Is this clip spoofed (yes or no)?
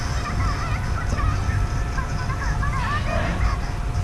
no